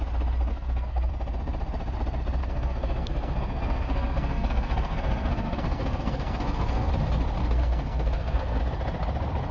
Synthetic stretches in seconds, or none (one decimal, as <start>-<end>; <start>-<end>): 0.5-1.1; 2.4-6.9; 7.4-8.6